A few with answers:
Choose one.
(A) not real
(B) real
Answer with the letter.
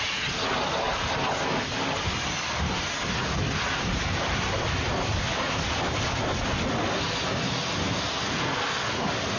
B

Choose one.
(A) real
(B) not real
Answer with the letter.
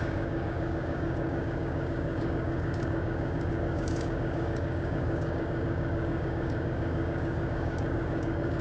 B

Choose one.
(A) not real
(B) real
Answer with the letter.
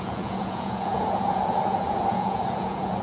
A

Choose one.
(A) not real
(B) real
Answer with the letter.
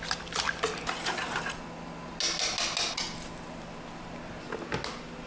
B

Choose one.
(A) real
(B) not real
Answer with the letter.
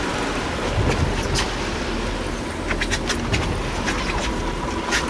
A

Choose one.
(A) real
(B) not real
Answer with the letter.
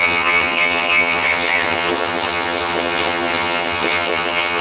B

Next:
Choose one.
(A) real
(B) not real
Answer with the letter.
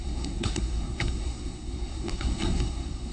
B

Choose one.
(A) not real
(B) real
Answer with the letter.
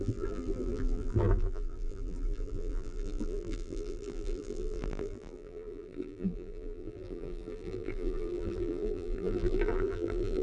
A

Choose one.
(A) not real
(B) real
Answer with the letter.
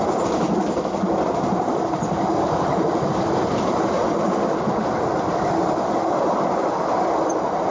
B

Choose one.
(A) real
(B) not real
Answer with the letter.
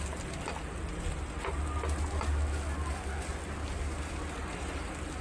A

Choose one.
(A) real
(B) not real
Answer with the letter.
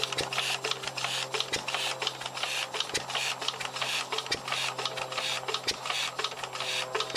A